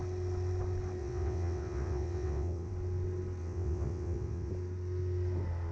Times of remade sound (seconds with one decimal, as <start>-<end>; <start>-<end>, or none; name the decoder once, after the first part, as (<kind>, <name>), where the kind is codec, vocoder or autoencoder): 1.0-2.7 (vocoder, WaveNeXt); 3.4-4.5